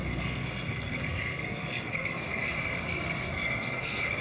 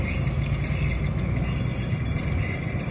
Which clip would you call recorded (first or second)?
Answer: second